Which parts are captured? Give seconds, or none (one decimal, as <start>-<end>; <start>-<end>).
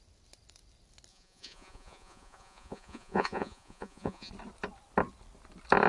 0.0-1.1; 4.3-5.9